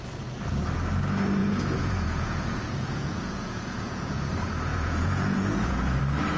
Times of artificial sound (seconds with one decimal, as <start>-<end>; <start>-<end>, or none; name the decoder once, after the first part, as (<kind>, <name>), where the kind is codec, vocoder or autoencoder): 1.4-4.3 (vocoder, Vocos); 4.7-6.0